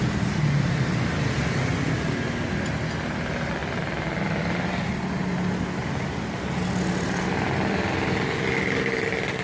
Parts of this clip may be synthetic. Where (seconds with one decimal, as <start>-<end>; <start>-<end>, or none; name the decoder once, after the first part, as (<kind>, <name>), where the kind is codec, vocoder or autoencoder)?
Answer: none